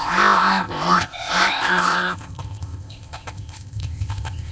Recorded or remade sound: remade